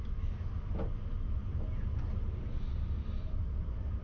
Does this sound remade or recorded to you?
recorded